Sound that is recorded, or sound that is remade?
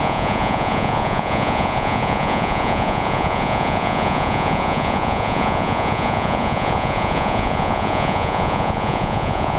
remade